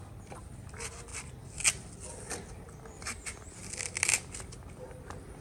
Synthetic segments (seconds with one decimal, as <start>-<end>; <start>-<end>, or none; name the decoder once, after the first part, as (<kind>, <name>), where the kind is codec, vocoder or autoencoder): none